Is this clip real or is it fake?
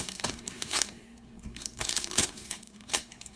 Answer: fake